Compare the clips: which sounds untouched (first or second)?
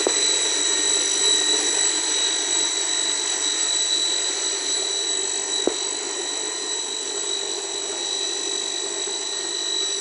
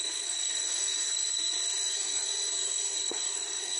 first